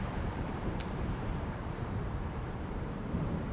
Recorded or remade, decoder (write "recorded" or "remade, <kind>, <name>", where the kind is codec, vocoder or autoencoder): remade, vocoder, BigVGAN v2